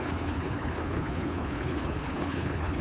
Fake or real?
fake